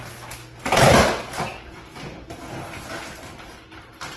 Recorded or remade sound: recorded